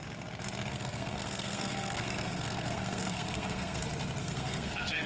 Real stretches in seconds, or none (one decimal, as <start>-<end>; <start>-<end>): 0.0-0.7; 3.8-4.2